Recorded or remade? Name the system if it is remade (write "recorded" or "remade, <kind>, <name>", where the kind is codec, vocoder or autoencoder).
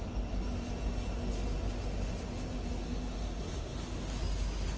recorded